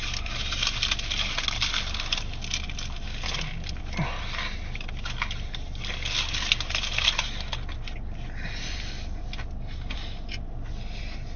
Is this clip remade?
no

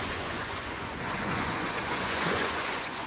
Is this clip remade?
yes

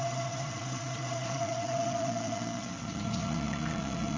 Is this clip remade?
yes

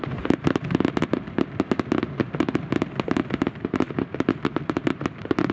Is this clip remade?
no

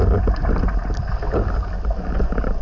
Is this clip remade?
no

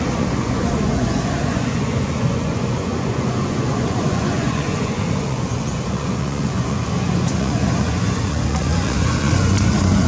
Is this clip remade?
yes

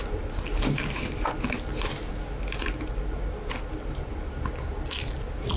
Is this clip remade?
no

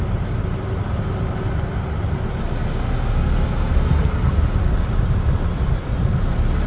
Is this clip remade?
no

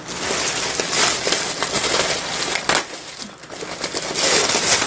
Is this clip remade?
no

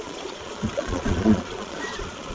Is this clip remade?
yes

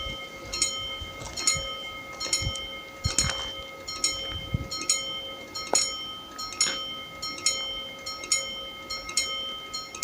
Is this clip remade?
no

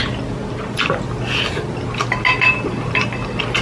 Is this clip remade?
no